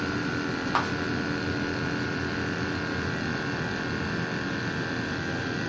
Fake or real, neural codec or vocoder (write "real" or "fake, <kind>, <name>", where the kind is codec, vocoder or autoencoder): real